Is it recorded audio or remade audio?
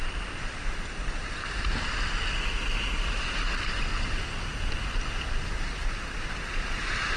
recorded